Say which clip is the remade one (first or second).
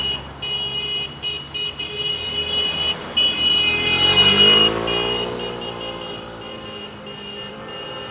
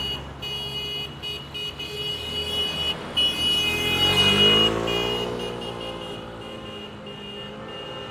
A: first